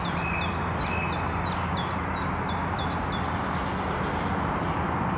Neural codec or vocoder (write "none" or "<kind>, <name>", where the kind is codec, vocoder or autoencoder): none